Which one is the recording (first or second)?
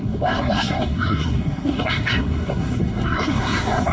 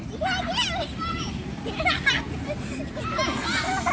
second